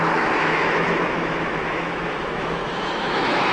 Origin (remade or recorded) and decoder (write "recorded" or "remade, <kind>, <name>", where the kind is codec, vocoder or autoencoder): remade, autoencoder, DAC-VAE